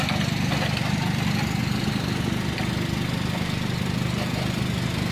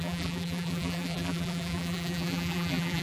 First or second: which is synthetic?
second